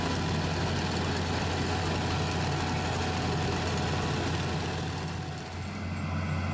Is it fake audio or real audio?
real